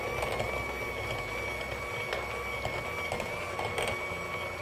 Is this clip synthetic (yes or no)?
no